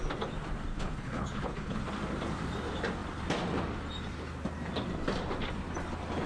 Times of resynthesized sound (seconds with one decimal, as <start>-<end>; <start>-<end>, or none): 0.7-1.8

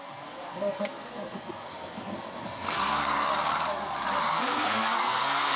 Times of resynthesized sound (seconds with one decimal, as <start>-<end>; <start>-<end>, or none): 0.0-3.3; 4.2-5.6